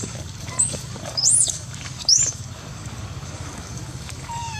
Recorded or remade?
remade